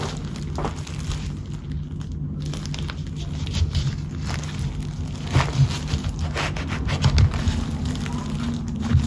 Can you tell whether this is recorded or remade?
recorded